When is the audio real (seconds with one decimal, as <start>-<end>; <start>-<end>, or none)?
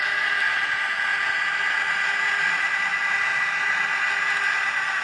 0.0-5.0